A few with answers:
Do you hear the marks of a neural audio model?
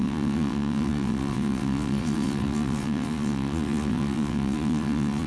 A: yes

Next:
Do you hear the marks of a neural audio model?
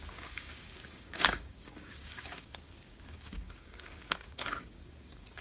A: yes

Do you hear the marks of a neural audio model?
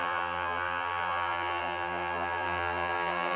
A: yes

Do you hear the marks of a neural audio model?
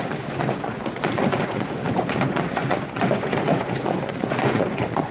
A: yes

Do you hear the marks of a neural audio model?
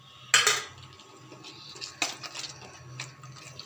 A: no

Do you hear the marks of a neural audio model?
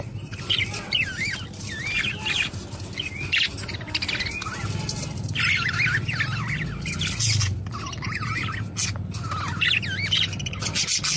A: no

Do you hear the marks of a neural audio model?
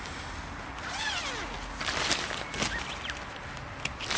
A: no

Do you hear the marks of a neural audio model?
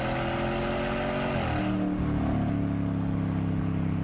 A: no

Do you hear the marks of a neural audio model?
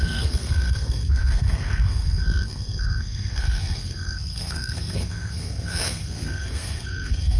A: yes